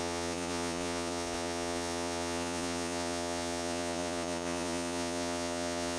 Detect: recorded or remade remade